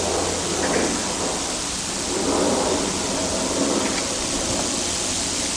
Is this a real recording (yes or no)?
yes